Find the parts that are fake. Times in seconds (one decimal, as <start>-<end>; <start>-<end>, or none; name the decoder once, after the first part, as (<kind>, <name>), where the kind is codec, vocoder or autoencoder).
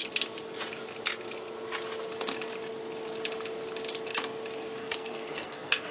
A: 4.8-5.9 (codec, SNAC)